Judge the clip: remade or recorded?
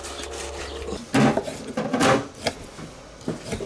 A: recorded